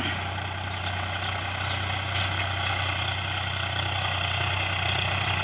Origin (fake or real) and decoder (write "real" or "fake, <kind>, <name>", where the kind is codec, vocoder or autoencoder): real